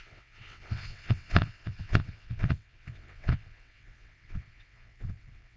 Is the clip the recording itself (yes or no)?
no